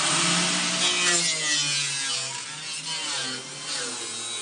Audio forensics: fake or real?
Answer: real